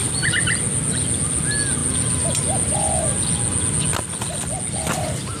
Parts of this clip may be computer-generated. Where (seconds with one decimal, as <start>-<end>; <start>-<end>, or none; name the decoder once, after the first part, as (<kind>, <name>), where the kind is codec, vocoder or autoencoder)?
none